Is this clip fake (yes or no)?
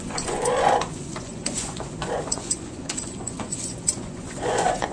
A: yes